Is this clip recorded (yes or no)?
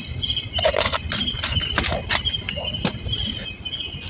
yes